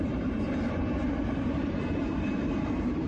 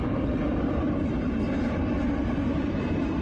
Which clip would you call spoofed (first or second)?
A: first